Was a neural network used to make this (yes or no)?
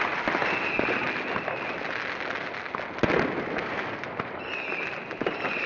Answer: no